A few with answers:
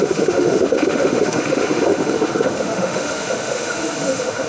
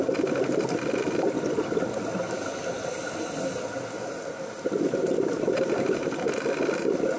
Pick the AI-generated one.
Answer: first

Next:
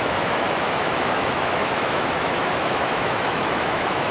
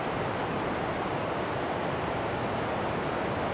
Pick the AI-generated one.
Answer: first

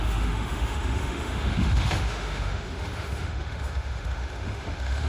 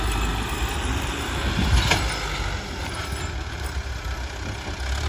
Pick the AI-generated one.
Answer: first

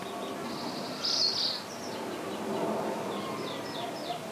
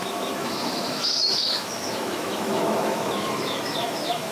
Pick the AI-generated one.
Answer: second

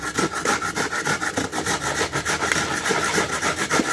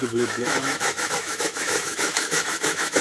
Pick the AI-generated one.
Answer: second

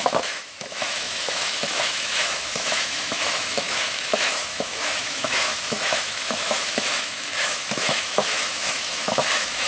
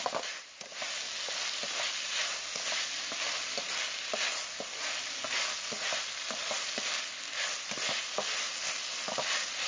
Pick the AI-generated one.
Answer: first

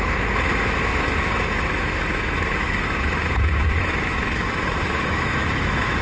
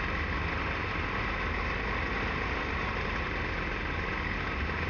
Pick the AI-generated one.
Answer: first